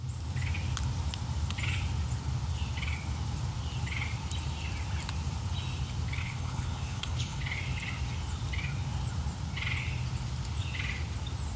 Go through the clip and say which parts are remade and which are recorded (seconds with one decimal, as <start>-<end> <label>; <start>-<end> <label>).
0.0-6.2 recorded; 6.2-7.4 remade; 7.4-11.6 recorded